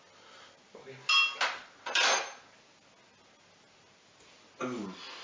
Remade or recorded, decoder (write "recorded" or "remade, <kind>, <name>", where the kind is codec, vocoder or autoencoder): recorded